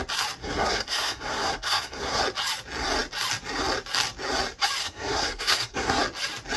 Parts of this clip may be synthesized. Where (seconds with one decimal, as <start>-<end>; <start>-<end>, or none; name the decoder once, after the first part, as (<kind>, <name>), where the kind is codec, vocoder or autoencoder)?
0.4-2.2 (codec, SNAC); 4.8-6.0